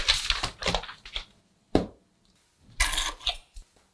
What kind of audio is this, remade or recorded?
recorded